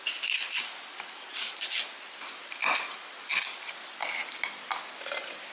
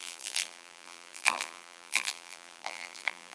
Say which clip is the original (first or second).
first